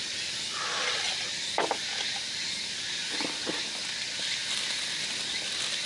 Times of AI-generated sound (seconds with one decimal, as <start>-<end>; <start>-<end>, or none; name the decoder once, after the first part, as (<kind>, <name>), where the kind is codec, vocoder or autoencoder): none